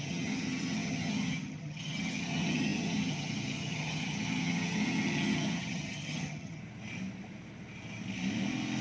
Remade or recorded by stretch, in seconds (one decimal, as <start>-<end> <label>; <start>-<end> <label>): 0.0-6.6 remade; 6.6-8.8 recorded

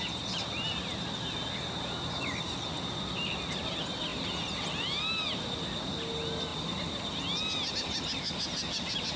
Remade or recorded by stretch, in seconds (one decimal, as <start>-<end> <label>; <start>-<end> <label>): 0.0-9.2 recorded

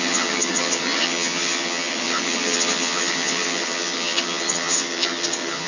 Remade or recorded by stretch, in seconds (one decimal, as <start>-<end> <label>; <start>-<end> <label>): 0.0-5.7 remade